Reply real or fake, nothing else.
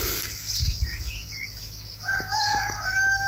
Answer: fake